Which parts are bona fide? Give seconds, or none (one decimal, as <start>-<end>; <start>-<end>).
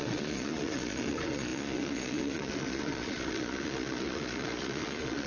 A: none